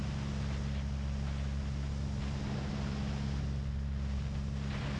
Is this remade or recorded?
recorded